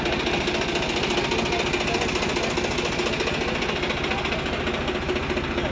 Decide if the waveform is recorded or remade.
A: recorded